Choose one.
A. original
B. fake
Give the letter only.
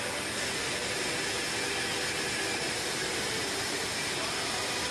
A